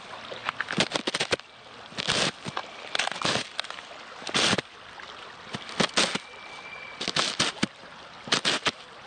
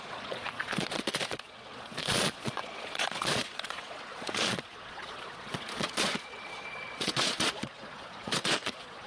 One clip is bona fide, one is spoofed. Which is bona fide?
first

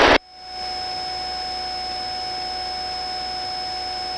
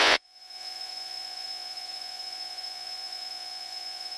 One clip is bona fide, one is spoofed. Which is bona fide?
first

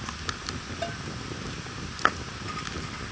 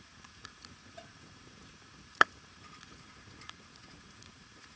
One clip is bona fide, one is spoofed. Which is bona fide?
first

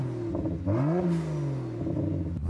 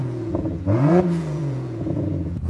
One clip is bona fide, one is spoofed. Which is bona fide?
first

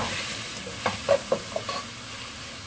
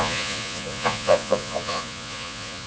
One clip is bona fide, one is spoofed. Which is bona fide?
first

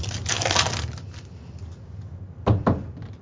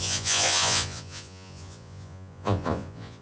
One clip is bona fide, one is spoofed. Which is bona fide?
first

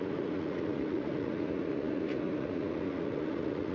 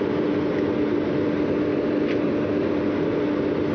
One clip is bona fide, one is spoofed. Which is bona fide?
second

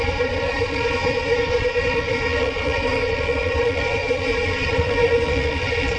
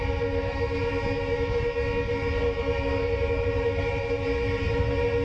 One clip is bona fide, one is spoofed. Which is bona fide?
second